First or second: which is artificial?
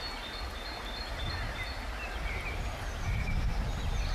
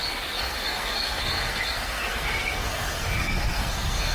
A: second